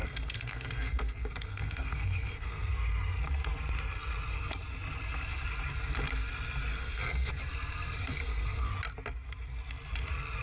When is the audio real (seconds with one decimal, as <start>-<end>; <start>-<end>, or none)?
2.7-6.7; 7.3-8.1; 8.7-10.4